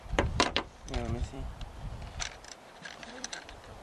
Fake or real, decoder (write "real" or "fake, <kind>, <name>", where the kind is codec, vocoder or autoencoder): fake, vocoder, BigVGAN v2